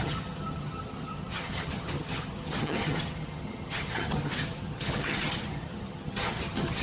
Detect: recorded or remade remade